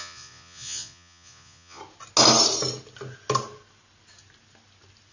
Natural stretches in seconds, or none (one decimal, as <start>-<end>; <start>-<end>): 1.8-5.1